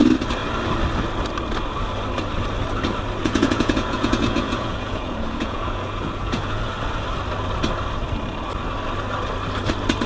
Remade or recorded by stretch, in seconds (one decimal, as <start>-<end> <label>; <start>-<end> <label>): 0.0-3.2 recorded; 3.2-6.7 remade; 6.7-10.1 recorded